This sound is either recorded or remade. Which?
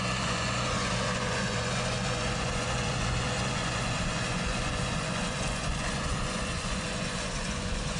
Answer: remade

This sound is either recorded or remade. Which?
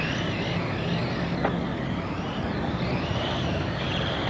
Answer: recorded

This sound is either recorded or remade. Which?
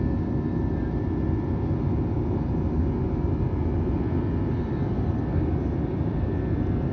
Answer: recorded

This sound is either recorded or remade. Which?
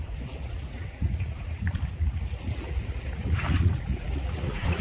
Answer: remade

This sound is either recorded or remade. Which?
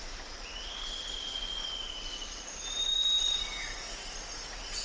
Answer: recorded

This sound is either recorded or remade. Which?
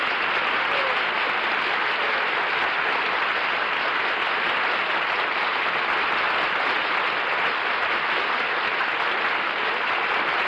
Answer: recorded